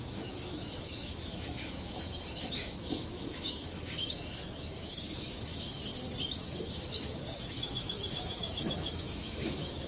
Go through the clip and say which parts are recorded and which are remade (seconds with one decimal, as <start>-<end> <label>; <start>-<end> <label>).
0.0-5.8 remade; 5.8-6.4 recorded; 6.4-9.9 remade